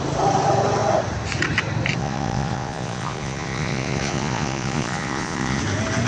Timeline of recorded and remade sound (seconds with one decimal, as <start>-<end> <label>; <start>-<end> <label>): 0.0-2.0 recorded; 2.0-5.6 remade; 5.6-6.1 recorded